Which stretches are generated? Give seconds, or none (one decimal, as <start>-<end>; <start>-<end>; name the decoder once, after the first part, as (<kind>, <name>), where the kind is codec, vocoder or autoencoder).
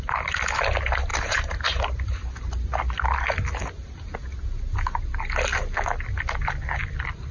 1.1-2.3 (vocoder, BigVGAN v2)